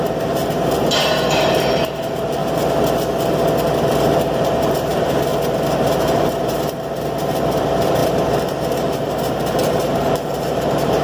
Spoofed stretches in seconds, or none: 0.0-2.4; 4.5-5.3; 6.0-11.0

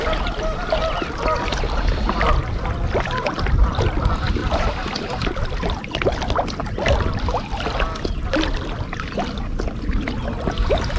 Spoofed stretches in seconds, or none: 4.4-5.8; 6.6-7.7

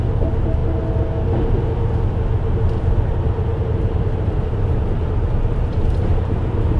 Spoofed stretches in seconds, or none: 3.5-5.0; 6.1-6.8

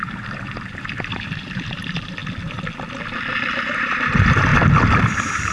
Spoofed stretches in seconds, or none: 0.0-2.2; 3.6-4.5; 5.0-5.5

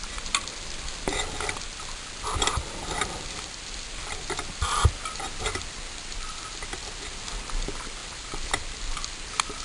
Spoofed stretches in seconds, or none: 8.0-8.6

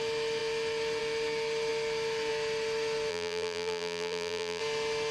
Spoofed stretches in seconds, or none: 3.1-4.6

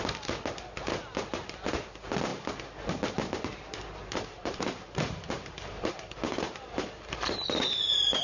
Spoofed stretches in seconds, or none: 4.0-8.2

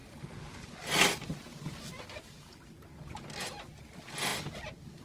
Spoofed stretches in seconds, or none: none